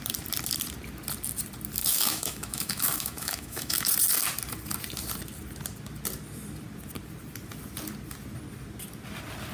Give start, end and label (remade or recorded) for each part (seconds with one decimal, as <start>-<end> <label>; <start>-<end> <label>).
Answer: 0.0-1.8 recorded; 1.8-3.9 remade; 3.9-9.5 recorded